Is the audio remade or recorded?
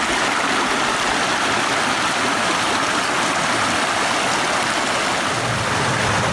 recorded